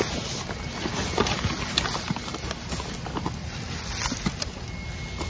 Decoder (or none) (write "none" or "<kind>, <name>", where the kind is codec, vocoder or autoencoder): none